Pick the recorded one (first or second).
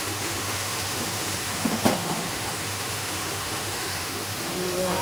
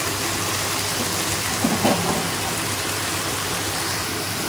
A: second